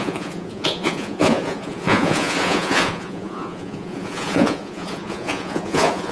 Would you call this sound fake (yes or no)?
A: yes